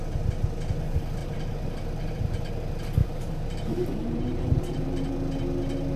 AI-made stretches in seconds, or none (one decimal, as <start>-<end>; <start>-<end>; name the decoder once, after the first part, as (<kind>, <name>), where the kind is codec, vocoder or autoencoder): 1.2-2.5 (vocoder, BigVGAN v2); 3.0-5.1

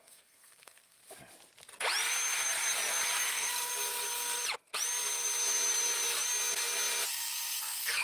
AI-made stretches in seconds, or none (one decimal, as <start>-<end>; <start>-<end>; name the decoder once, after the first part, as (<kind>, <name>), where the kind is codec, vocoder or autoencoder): 0.0-1.0 (codec, SNAC); 3.3-3.7; 7.1-8.0

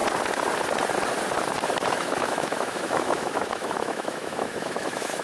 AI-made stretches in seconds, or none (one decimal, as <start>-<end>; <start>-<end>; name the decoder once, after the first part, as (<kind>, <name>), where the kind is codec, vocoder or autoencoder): 1.9-5.2 (autoencoder, DAC-VAE)

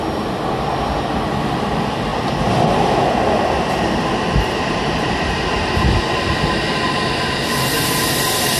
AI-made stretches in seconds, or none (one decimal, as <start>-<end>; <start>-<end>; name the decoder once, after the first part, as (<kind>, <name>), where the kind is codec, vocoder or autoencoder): none